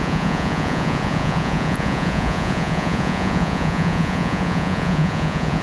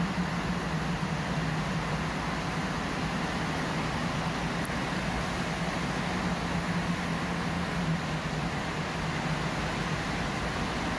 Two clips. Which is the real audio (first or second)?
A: second